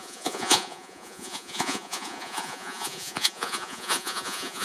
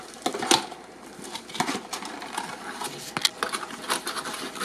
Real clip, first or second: second